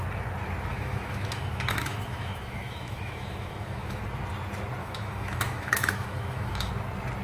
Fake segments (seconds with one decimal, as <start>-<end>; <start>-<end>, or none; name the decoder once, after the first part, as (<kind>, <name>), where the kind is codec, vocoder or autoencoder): 0.7-4.0 (autoencoder, DAC-VAE); 4.8-6.7